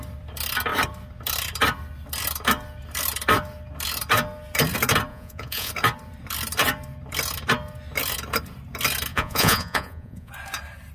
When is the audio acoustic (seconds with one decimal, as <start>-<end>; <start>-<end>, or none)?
0.0-5.1; 5.7-9.1; 10.3-10.9